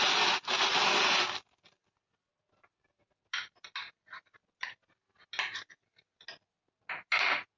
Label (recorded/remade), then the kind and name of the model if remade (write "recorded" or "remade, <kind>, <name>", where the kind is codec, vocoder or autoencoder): recorded